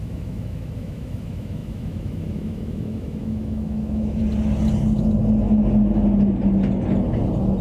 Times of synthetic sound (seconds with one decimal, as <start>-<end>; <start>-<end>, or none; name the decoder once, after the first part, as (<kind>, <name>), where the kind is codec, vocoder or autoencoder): 0.0-4.2 (autoencoder, DAC-VAE)